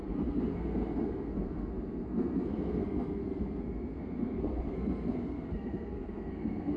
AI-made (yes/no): yes